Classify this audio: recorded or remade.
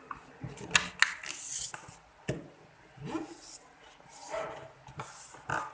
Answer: recorded